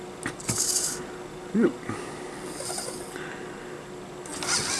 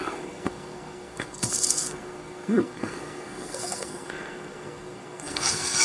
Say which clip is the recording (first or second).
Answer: first